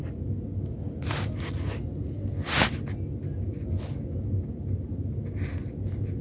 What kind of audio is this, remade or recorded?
recorded